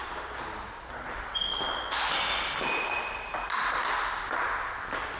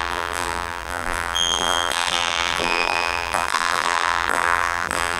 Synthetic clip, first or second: second